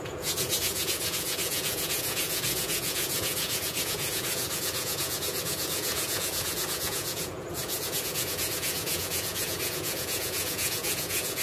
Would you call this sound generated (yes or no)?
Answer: yes